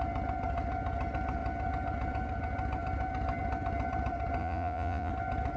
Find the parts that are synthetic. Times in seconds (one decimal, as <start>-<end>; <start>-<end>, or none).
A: 4.4-5.1